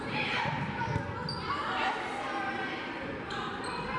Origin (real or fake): real